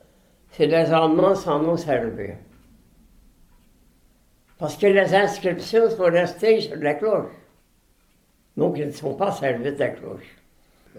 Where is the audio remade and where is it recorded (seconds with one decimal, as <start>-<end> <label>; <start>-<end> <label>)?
0.0-1.2 recorded; 1.2-4.2 remade; 4.2-11.0 recorded